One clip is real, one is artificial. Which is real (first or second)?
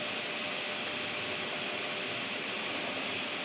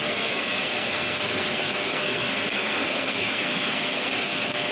first